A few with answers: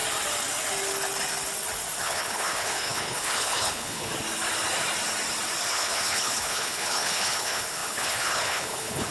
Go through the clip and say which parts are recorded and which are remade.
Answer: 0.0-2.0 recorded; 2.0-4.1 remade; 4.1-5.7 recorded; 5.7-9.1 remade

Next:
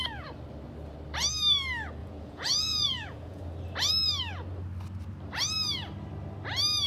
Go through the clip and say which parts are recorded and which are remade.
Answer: 0.0-2.0 recorded; 2.0-3.4 remade; 3.4-6.9 recorded

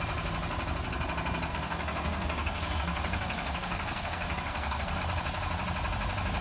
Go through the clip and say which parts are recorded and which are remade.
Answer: 0.0-1.5 recorded; 1.5-5.0 remade; 5.0-6.4 recorded